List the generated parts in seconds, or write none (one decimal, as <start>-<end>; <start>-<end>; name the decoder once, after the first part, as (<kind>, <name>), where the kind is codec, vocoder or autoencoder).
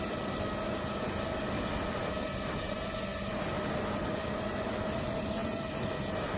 none